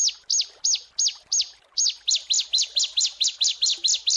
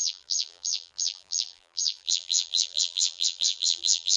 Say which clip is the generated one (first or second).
second